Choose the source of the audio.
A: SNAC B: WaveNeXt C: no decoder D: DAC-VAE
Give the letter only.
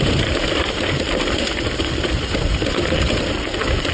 C